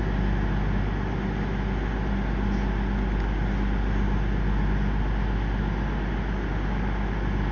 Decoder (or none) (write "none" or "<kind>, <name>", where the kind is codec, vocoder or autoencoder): none